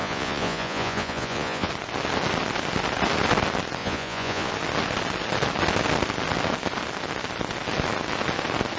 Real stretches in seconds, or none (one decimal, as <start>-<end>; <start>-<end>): 1.7-3.8; 4.5-8.8